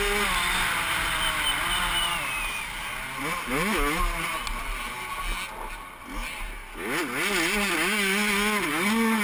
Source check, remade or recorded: recorded